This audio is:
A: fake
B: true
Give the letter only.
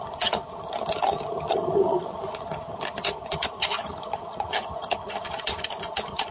A